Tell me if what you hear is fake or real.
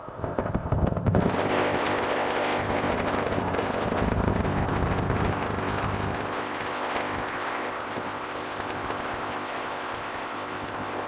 fake